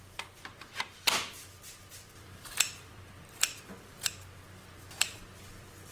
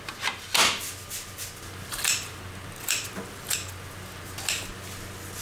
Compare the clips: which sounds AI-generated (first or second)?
first